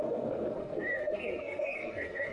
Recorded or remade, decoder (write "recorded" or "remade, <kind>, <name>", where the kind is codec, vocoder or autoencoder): remade, codec, SNAC